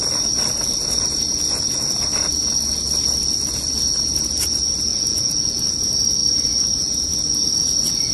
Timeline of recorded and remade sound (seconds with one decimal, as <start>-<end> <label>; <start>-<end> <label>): 0.0-4.9 recorded; 4.9-5.7 remade; 5.7-8.1 recorded